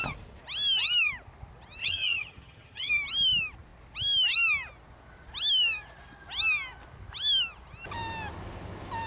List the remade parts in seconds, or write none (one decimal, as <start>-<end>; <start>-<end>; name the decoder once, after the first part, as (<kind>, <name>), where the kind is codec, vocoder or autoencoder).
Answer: 1.8-2.9 (vocoder, HiFi-GAN)